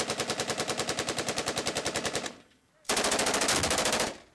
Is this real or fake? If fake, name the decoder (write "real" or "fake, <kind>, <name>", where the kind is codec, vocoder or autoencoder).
real